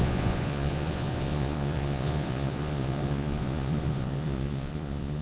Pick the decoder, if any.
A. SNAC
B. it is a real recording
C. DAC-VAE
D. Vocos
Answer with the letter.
D